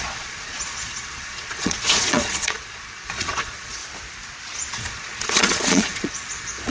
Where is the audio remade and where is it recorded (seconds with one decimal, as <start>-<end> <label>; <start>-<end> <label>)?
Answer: 0.0-3.8 remade; 3.8-4.7 recorded; 4.7-6.7 remade